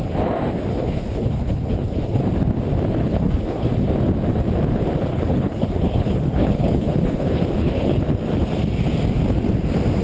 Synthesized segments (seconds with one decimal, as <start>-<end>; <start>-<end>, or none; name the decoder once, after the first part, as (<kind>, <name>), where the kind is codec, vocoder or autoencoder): 0.7-2.2 (codec, HILCodec); 3.0-3.7; 5.1-8.0